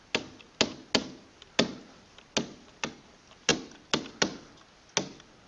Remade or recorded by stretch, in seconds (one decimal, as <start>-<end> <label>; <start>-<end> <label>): 0.0-5.5 recorded